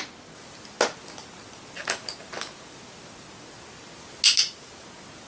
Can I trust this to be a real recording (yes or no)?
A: yes